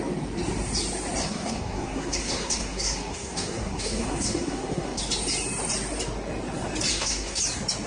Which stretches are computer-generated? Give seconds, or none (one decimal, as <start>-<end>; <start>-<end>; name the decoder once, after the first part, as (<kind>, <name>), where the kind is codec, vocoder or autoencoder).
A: 1.2-5.0 (codec, SNAC); 6.9-7.4